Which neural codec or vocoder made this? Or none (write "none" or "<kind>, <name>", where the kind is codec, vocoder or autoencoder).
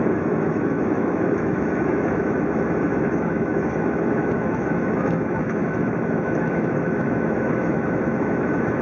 autoencoder, DAC-VAE